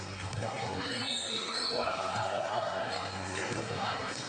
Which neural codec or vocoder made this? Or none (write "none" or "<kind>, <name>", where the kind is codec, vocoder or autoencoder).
codec, SNAC